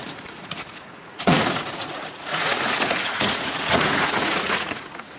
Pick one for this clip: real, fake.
fake